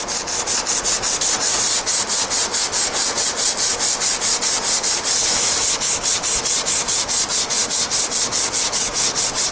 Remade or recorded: recorded